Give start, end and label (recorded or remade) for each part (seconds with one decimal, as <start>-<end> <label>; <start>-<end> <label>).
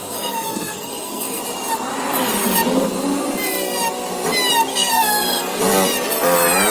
0.0-1.4 remade; 1.4-4.7 recorded; 4.7-5.6 remade; 5.6-6.7 recorded